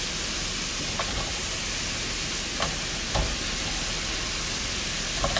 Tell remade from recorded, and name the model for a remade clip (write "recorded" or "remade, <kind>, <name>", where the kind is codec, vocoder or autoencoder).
recorded